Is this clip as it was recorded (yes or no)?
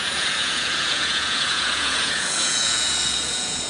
no